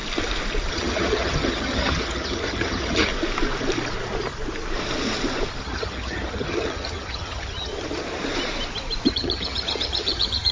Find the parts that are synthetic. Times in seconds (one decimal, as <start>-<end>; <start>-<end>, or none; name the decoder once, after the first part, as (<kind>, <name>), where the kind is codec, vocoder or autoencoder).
0.7-3.1 (vocoder, HiFi-GAN); 5.6-7.7; 9.1-10.5